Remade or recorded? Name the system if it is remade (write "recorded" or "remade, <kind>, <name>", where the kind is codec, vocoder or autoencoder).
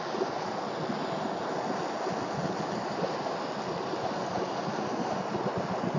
recorded